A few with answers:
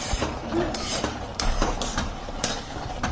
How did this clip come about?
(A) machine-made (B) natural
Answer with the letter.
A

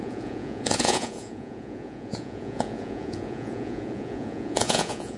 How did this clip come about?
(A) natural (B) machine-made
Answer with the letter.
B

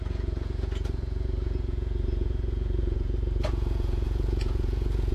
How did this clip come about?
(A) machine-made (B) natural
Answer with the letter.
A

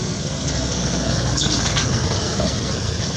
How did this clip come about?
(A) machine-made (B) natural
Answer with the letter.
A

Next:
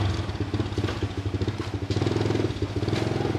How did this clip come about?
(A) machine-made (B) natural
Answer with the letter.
B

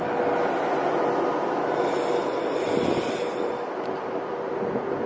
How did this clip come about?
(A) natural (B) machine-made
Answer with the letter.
A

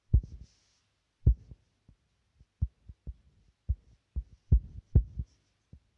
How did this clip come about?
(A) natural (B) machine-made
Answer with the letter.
A